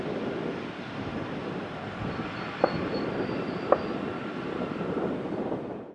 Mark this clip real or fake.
real